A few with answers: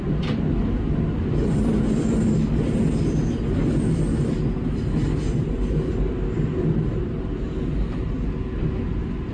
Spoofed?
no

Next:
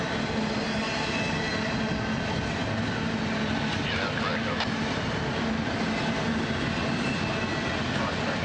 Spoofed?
no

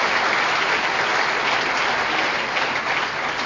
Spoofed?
no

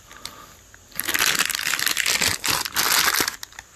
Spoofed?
no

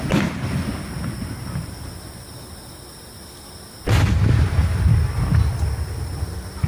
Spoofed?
no